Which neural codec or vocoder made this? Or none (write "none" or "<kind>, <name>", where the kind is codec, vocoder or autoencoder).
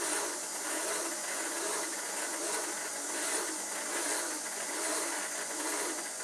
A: vocoder, Vocos